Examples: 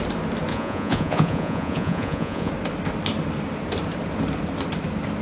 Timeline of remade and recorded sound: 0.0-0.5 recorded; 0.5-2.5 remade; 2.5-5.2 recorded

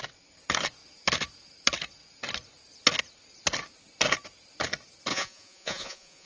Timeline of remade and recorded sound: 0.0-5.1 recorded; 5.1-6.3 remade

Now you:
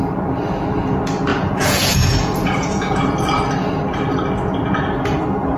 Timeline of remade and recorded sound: 0.0-1.3 recorded; 1.3-3.1 remade; 3.1-5.6 recorded

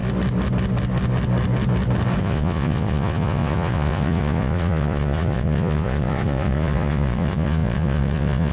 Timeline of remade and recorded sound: 0.0-2.2 recorded; 2.2-8.5 remade

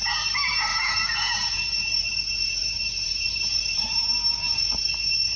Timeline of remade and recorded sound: 0.0-0.7 recorded; 0.7-3.9 remade; 3.9-4.3 recorded; 4.3-5.4 remade

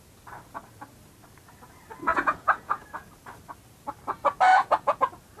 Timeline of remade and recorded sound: 0.0-2.1 recorded; 2.1-2.8 remade; 2.8-4.5 recorded; 4.5-5.0 remade; 5.0-5.4 recorded

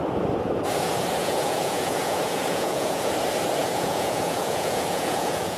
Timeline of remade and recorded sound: 0.0-1.2 recorded; 1.2-3.1 remade; 3.1-3.6 recorded; 3.6-5.6 remade

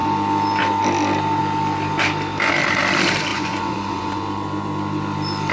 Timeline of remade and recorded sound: 0.0-3.3 recorded; 3.3-4.2 remade; 4.2-5.5 recorded